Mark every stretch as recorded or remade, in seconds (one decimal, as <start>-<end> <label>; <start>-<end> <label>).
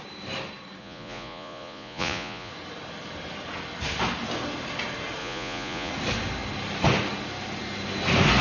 0.0-0.8 recorded; 0.8-2.5 remade; 2.5-5.2 recorded; 5.2-5.9 remade; 5.9-8.4 recorded